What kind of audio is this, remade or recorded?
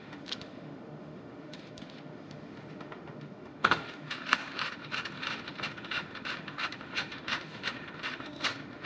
remade